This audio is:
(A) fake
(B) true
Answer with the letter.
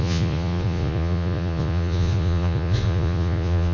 A